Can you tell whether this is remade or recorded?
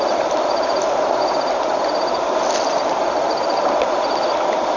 recorded